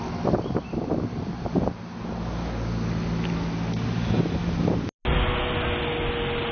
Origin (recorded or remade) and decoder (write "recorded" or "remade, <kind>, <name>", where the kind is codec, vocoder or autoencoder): recorded